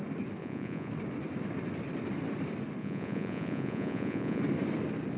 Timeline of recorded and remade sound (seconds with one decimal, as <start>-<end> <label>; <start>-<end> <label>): 0.0-0.4 recorded; 0.4-0.9 remade; 0.9-2.8 recorded; 2.8-4.4 remade; 4.4-5.2 recorded